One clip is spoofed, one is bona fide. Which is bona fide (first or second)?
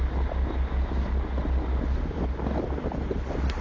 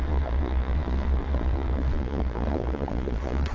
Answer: first